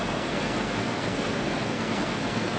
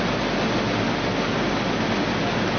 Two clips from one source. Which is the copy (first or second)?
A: first